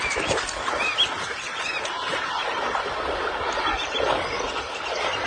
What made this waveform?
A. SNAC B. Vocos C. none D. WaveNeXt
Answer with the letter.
C